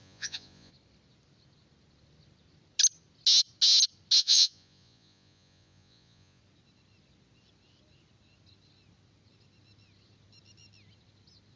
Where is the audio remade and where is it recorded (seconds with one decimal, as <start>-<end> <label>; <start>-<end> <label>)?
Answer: 0.0-0.7 remade; 0.7-4.2 recorded; 4.2-6.4 remade; 6.4-11.6 recorded